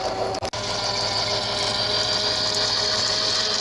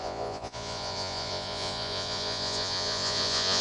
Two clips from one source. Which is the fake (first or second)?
second